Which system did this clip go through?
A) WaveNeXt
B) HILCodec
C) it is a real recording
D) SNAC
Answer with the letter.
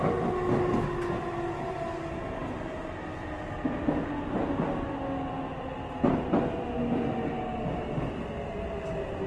C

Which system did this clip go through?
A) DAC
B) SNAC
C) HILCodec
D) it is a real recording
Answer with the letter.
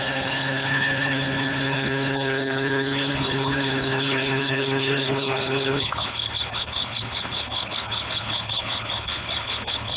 C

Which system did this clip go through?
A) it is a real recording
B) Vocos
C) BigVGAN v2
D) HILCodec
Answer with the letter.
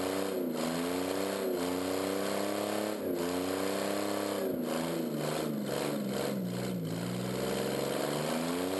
A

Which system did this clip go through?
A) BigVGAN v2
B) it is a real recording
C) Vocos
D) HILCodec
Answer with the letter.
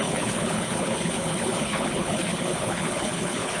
D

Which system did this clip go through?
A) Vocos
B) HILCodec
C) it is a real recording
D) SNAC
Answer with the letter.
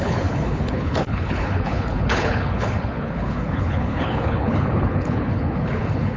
B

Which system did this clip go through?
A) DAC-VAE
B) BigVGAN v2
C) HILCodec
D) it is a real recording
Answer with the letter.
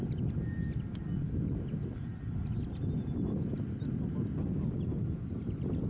D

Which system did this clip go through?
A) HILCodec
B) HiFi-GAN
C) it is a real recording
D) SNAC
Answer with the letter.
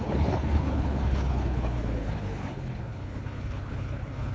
A